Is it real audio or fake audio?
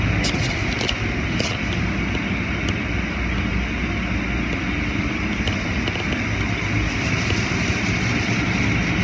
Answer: real